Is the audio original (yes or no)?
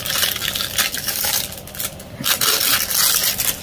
yes